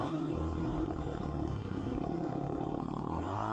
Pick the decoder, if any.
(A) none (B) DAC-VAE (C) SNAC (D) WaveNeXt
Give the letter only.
C